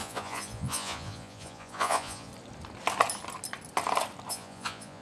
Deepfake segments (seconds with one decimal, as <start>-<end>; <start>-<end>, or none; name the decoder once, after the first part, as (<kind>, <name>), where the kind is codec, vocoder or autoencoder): 0.0-2.3 (vocoder, Vocos); 4.3-5.0

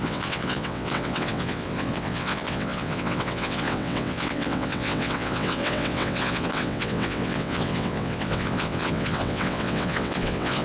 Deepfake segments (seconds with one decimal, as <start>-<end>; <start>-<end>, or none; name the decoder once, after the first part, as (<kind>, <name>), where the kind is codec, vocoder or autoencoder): 0.0-10.6 (vocoder, WaveNeXt)

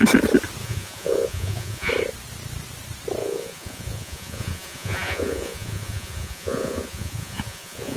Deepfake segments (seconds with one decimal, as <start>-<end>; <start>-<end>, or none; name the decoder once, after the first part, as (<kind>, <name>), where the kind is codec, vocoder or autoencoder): 0.6-1.9 (vocoder, Vocos); 3.2-8.0

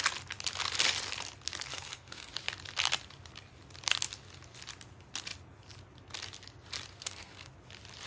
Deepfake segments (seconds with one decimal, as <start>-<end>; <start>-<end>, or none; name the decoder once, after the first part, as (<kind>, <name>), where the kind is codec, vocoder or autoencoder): 1.7-2.3 (codec, SNAC); 6.9-7.5

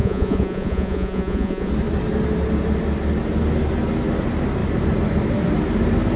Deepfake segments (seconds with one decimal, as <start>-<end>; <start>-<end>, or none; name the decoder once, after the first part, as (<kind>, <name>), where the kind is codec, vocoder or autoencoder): 0.0-1.7 (vocoder, Vocos)

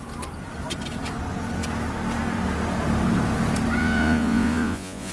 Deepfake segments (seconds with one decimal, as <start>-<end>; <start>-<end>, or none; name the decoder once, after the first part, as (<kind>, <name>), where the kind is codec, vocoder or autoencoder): 3.8-5.1 (vocoder, Vocos)

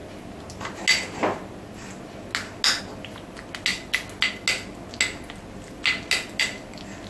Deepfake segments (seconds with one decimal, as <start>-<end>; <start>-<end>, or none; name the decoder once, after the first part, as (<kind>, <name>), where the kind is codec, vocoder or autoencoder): none